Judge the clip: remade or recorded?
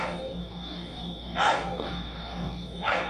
remade